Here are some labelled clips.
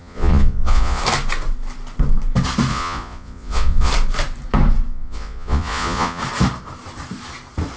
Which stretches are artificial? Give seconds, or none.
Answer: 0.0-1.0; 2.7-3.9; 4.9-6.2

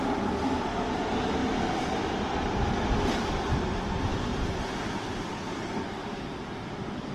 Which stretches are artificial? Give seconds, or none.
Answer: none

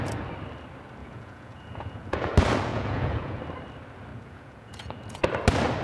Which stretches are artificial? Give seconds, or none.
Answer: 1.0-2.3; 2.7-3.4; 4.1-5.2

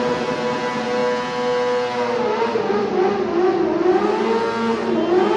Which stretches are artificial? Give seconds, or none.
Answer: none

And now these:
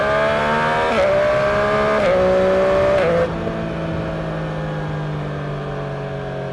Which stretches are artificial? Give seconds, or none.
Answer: none